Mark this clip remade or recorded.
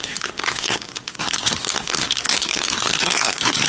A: remade